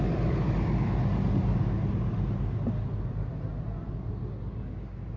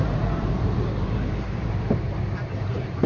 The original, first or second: first